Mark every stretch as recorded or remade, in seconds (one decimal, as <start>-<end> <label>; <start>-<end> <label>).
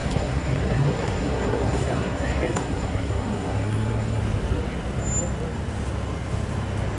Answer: 0.0-4.2 remade; 4.2-7.0 recorded